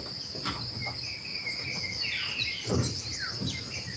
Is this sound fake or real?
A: real